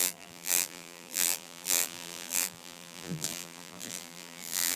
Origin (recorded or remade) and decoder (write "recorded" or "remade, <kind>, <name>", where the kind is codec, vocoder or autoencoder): remade, vocoder, BigVGAN v2